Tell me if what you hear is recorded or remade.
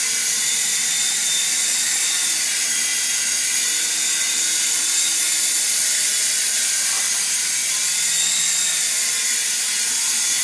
recorded